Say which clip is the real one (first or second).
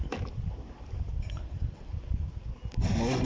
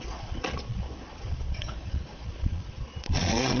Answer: first